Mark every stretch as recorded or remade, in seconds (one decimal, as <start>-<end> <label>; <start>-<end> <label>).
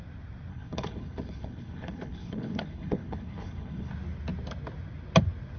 0.0-0.5 recorded; 0.5-3.9 remade; 3.9-5.6 recorded